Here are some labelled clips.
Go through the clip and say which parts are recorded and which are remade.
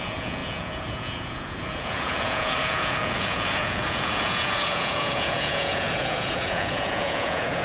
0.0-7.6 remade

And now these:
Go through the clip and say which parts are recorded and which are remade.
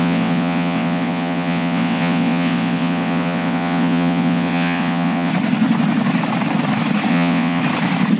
0.0-5.3 remade; 5.3-7.1 recorded; 7.1-7.6 remade; 7.6-8.2 recorded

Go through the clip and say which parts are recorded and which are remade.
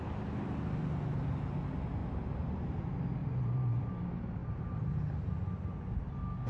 0.0-2.0 recorded; 2.0-2.8 remade; 2.8-3.2 recorded; 3.2-3.9 remade; 3.9-4.4 recorded; 4.4-4.9 remade; 4.9-6.5 recorded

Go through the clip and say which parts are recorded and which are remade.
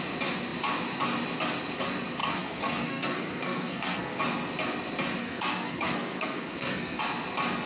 0.0-2.2 recorded; 2.2-4.2 remade; 4.2-5.2 recorded; 5.2-7.0 remade; 7.0-7.7 recorded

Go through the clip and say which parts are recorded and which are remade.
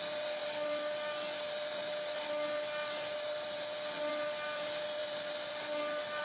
0.0-6.2 recorded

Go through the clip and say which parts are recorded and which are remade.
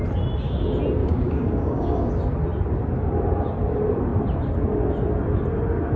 0.0-1.0 recorded; 1.0-2.1 remade; 2.1-6.0 recorded